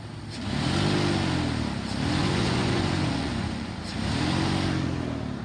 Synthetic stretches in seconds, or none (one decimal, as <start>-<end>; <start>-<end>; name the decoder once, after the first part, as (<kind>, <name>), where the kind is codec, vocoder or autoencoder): 2.2-3.7 (vocoder, Vocos)